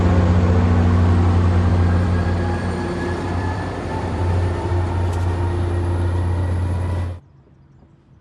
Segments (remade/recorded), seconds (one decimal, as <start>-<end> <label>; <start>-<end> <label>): 0.0-1.7 recorded; 1.7-4.7 remade; 4.7-8.2 recorded